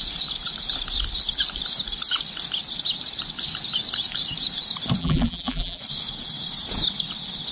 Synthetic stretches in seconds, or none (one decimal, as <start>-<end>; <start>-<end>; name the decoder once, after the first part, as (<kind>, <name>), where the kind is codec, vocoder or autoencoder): 5.0-5.8 (vocoder, BigVGAN v2)

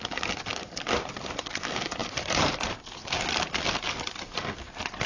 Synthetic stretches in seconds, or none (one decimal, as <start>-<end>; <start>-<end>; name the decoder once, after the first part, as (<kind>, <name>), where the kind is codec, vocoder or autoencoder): 0.5-1.4 (vocoder, BigVGAN v2); 2.0-2.8

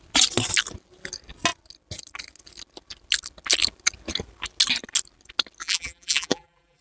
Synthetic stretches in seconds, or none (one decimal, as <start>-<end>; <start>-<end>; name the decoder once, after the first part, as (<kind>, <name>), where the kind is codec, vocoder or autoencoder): 5.6-6.8 (vocoder, BigVGAN v2)